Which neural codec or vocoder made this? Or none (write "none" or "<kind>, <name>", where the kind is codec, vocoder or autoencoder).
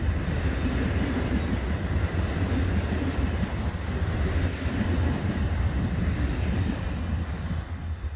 none